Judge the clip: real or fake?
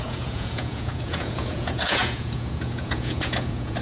fake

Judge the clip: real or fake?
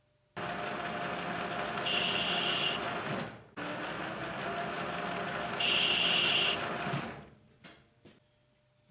real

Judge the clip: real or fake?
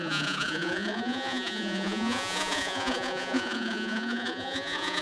fake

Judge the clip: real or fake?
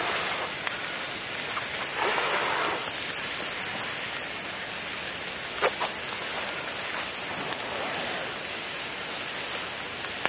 real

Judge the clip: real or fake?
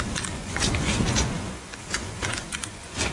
fake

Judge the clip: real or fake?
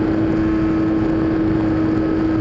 real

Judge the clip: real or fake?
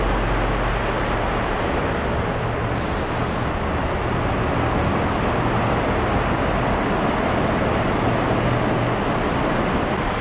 real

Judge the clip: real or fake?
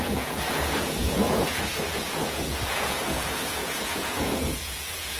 fake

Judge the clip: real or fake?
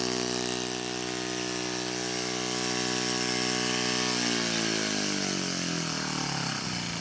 real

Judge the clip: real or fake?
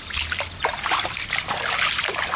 real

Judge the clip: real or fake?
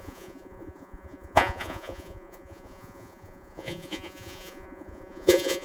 fake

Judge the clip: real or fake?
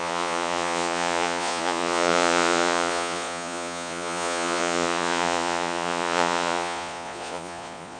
fake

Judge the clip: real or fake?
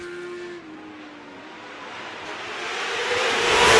real